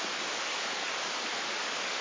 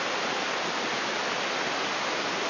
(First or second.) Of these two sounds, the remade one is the first